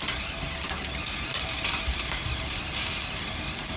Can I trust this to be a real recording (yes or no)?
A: yes